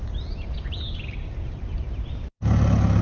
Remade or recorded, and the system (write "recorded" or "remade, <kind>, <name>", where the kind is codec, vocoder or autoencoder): recorded